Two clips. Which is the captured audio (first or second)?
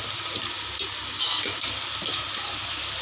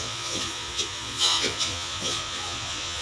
first